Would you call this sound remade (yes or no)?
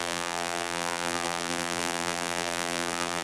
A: yes